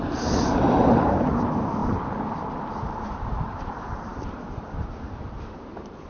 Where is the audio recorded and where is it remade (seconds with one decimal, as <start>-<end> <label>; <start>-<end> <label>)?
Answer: 0.0-1.8 remade; 1.8-2.9 recorded; 2.9-6.1 remade